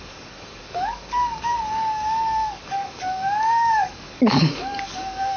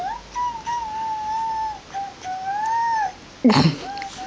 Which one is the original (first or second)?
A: second